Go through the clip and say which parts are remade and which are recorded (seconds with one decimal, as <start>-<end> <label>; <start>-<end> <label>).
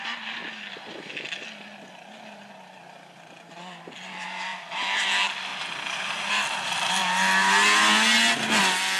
0.0-0.4 remade; 0.4-1.9 recorded; 1.9-5.5 remade; 5.5-6.3 recorded; 6.3-7.0 remade; 7.0-8.6 recorded; 8.6-9.0 remade